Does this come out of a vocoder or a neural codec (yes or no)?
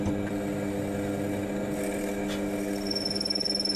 no